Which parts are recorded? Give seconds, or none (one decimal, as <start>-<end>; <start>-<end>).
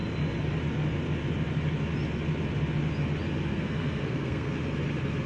0.0-3.5; 4.5-5.3